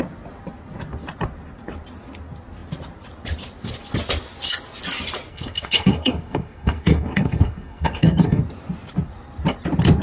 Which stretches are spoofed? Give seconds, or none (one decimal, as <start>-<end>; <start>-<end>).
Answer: 5.3-8.4